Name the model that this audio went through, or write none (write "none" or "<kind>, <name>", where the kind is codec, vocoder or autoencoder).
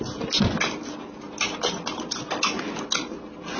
none